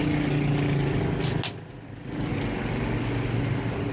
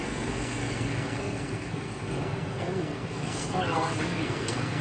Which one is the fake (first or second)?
second